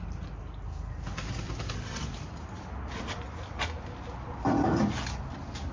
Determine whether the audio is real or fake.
real